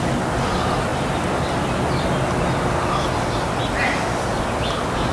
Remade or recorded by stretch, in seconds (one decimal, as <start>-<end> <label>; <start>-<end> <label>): 0.0-5.1 recorded

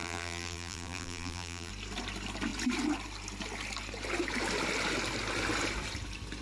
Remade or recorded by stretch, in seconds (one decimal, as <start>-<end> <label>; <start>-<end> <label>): 0.0-1.7 remade; 1.7-6.4 recorded

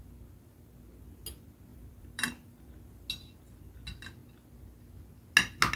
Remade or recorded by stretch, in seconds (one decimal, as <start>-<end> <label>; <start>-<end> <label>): 0.0-1.7 recorded; 1.7-2.7 remade; 2.7-5.8 recorded

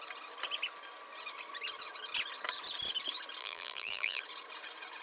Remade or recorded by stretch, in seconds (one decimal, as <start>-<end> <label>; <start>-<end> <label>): 0.0-3.4 recorded; 3.4-4.2 remade; 4.2-5.0 recorded

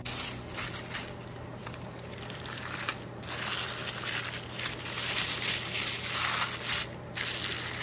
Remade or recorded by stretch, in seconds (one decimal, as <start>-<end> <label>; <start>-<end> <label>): 0.0-1.6 recorded; 1.6-2.9 remade; 2.9-7.8 recorded

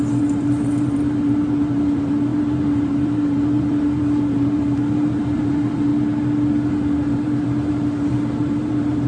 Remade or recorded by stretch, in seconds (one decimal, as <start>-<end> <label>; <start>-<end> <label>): 0.0-5.9 remade; 5.9-6.7 recorded; 6.7-9.1 remade